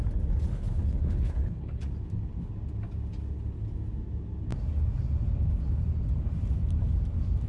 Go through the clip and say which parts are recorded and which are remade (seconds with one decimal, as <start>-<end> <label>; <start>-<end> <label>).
0.0-0.5 recorded; 0.5-1.8 remade; 1.8-7.5 recorded